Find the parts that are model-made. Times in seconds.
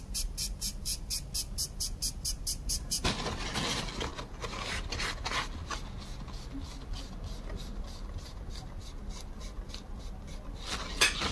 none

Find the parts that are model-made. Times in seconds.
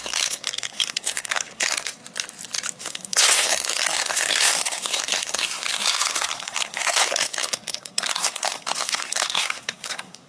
0.0-2.0 (codec, SNAC); 2.8-10.3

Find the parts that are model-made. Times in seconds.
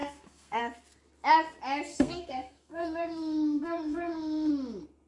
0.0-0.6 (codec, SNAC); 1.9-4.5